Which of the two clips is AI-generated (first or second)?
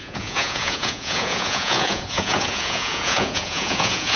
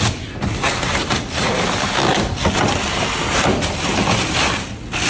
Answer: first